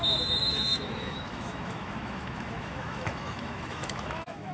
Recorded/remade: remade